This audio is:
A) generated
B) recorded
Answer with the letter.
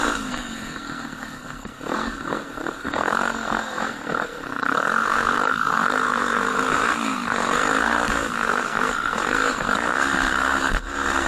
A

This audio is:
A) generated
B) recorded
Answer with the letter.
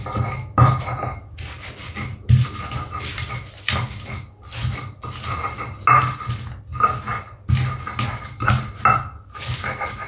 B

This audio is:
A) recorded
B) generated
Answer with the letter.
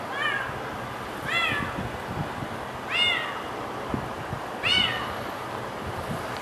A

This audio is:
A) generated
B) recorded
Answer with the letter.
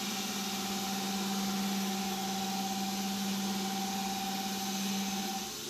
B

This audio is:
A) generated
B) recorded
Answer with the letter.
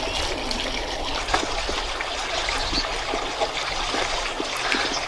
B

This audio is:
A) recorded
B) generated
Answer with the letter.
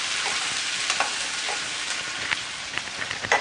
A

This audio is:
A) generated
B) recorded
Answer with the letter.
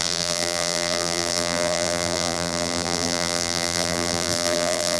A